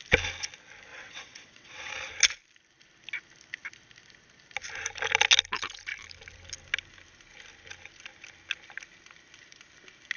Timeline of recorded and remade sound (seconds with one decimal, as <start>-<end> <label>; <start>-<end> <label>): 0.0-0.9 recorded; 0.9-1.9 remade; 1.9-10.2 recorded